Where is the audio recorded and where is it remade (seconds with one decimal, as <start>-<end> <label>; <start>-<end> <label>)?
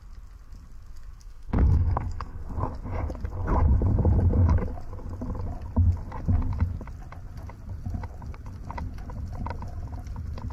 0.0-1.2 recorded; 1.2-2.5 remade; 2.5-10.5 recorded